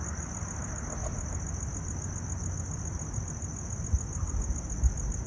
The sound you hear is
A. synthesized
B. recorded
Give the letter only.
B